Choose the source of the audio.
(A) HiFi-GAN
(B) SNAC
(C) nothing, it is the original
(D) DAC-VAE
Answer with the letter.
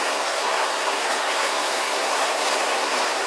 B